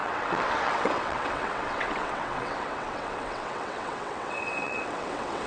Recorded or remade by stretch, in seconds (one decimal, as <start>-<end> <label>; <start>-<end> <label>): 0.0-5.5 remade